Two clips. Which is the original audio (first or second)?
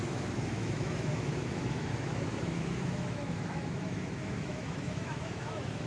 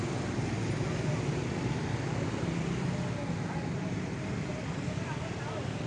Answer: second